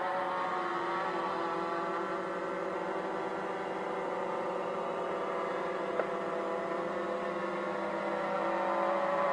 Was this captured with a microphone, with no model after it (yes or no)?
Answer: yes